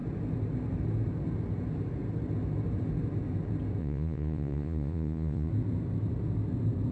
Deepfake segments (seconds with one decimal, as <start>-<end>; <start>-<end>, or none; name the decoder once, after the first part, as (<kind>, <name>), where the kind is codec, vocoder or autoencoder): 3.8-5.5 (vocoder, Vocos)